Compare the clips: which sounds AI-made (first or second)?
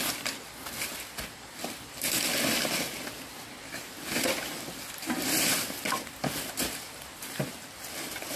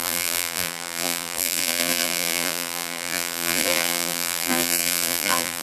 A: second